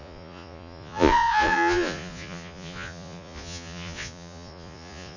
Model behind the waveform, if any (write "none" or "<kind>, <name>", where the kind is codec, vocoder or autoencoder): vocoder, Vocos